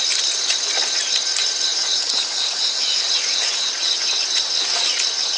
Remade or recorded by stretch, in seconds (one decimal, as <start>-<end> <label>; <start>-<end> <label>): 0.0-1.7 recorded; 1.7-4.1 remade; 4.1-5.4 recorded